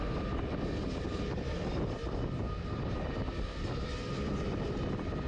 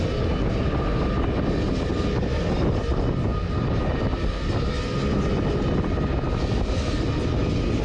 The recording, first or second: second